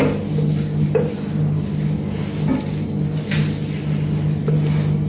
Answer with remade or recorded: recorded